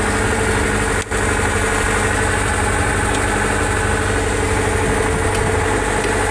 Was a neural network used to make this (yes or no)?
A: no